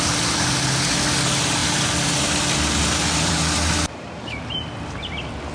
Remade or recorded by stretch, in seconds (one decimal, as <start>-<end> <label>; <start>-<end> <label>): 0.0-1.6 recorded; 1.6-4.6 remade; 4.6-5.5 recorded